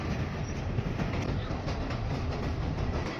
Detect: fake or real real